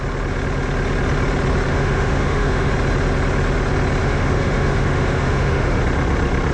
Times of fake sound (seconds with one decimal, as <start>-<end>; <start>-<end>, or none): 1.7-2.7; 4.0-5.8

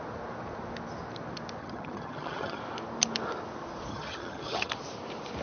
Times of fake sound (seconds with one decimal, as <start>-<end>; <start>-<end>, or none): 1.6-2.6; 3.9-4.7

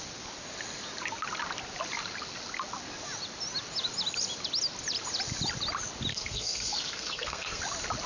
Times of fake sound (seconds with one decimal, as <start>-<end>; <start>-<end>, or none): 6.1-7.6

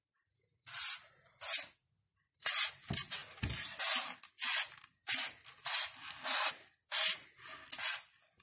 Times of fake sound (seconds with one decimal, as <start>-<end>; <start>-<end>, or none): none

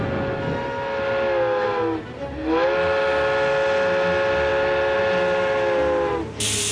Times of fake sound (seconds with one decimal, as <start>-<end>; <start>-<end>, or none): none

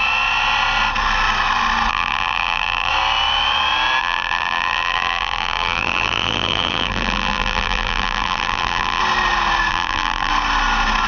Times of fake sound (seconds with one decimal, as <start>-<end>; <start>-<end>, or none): 1.9-2.9; 4.0-9.0; 9.7-10.3